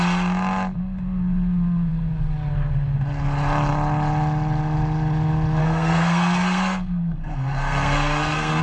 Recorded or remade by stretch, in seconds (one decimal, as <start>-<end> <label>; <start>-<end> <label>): 0.0-5.6 recorded; 5.6-8.6 remade

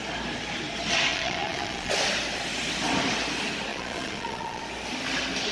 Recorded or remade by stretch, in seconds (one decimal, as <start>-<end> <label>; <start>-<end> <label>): 0.0-1.1 recorded; 1.1-1.9 remade; 1.9-3.7 recorded; 3.7-4.6 remade; 4.6-5.5 recorded

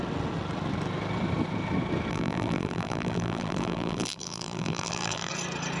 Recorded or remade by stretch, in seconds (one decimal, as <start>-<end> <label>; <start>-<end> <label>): 0.0-2.1 recorded; 2.1-5.3 remade; 5.3-5.8 recorded